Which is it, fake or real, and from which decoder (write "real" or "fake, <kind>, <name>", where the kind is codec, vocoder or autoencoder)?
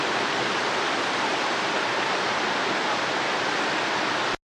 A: real